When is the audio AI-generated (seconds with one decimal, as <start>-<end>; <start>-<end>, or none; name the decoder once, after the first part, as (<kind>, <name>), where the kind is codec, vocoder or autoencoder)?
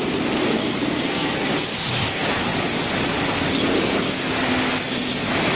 0.6-1.5 (codec, SNAC)